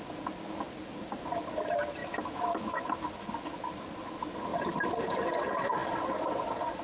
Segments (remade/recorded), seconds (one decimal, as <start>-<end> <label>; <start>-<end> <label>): 0.0-2.0 recorded; 2.0-2.9 remade; 2.9-6.8 recorded